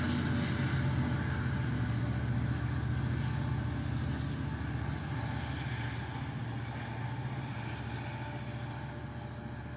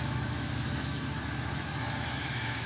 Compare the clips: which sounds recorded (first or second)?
first